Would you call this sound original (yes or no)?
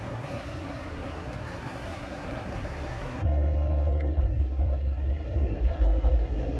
no